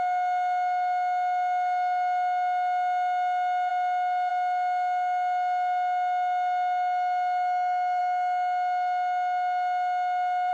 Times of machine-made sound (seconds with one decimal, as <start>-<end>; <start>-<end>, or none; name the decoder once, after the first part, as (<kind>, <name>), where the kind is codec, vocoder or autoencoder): none